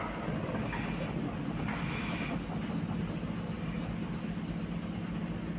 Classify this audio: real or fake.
real